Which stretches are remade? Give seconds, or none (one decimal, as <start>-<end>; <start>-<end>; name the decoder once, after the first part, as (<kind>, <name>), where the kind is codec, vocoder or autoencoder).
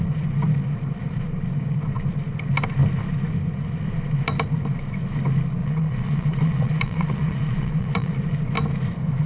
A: 5.6-8.1 (vocoder, Vocos)